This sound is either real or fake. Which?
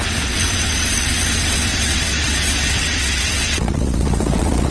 fake